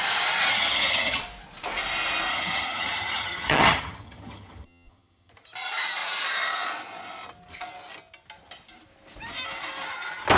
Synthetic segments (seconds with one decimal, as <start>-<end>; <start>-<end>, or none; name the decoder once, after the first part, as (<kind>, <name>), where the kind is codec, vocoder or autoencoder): 0.5-1.2 (vocoder, HiFi-GAN); 2.3-5.3